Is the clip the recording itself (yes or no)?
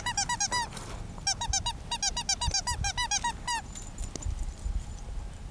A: yes